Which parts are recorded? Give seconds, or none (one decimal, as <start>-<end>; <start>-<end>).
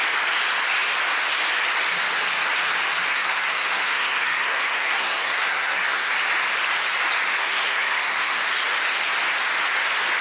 0.0-3.1; 6.1-7.4; 8.4-10.2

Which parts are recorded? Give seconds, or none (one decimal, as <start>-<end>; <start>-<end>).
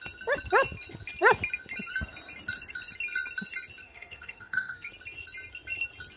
0.0-3.8; 4.9-6.2